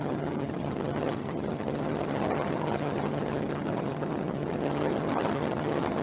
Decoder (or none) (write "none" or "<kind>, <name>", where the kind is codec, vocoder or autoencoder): vocoder, HiFi-GAN